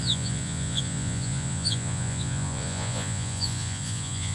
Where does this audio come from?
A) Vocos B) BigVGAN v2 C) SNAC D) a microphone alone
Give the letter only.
A